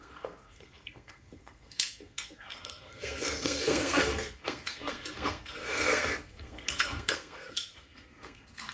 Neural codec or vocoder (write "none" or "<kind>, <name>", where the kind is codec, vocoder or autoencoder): codec, SNAC